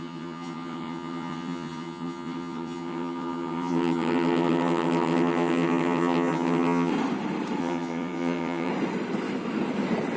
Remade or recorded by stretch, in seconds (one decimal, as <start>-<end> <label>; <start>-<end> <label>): 0.0-6.9 remade; 6.9-7.6 recorded; 7.6-8.7 remade; 8.7-10.2 recorded